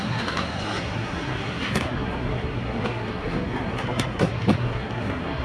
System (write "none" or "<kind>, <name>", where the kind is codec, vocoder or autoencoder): codec, SNAC